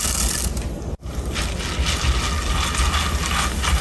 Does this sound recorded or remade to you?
recorded